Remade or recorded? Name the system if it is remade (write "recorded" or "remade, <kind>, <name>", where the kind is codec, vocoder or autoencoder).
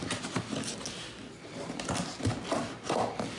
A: recorded